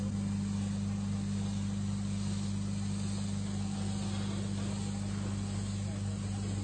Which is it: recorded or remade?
recorded